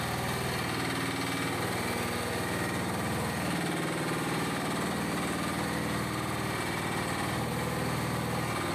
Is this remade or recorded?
recorded